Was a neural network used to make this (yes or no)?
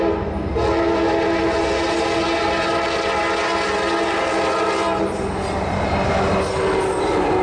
no